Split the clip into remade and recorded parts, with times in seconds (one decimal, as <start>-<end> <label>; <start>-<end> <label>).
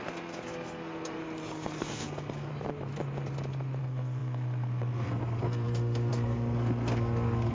0.0-1.2 remade; 1.2-1.8 recorded; 1.8-2.5 remade; 2.5-3.8 recorded; 3.8-7.5 remade